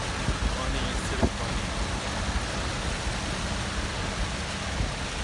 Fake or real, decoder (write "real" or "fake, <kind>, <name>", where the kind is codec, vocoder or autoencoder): real